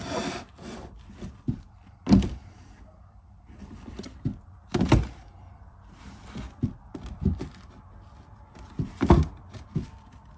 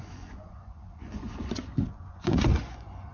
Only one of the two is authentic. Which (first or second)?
first